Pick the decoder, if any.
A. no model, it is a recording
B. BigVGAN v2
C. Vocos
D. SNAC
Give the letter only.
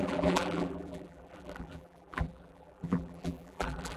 B